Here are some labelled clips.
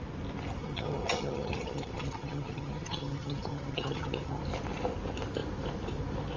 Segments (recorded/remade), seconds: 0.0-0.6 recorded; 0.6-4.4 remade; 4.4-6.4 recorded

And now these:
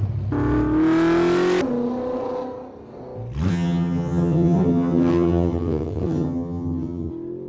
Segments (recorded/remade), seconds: 0.0-3.5 recorded; 3.5-7.1 remade; 7.1-7.5 recorded

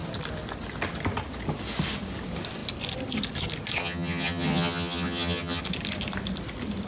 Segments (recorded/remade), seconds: 0.0-3.8 recorded; 3.8-5.6 remade; 5.6-6.9 recorded